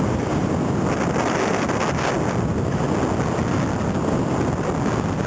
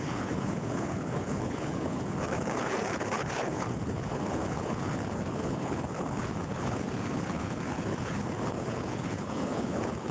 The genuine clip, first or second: first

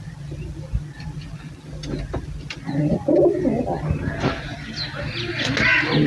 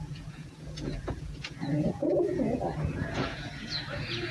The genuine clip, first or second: first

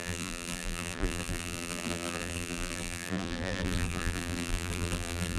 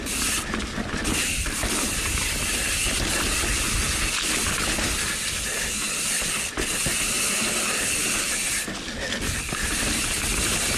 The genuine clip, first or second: second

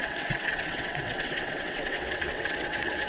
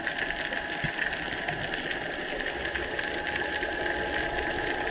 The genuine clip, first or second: second